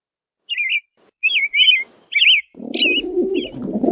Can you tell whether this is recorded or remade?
recorded